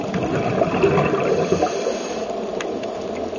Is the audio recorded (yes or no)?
yes